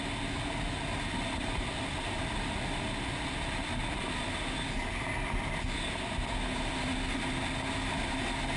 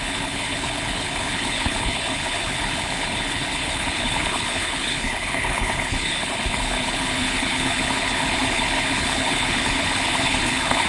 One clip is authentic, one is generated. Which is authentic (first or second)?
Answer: first